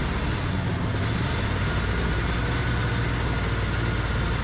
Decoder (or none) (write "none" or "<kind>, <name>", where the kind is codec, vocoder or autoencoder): none